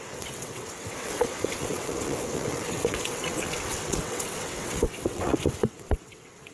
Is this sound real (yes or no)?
no